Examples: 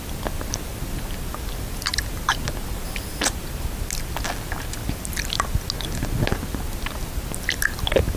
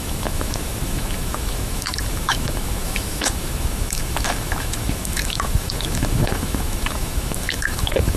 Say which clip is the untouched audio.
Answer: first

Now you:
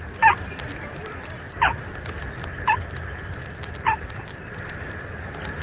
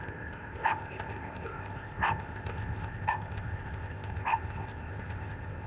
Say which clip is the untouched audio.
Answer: first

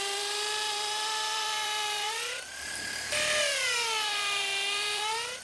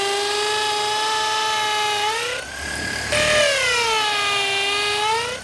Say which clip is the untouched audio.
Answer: second